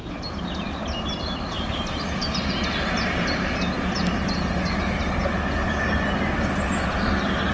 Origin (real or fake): real